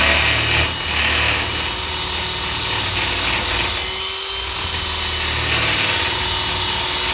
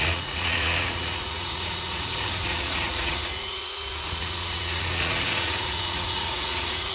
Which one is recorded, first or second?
first